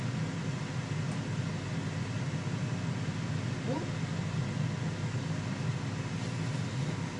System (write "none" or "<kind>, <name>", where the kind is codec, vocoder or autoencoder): none